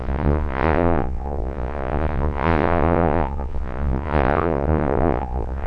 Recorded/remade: remade